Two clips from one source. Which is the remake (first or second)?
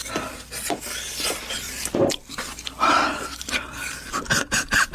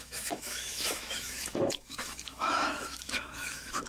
second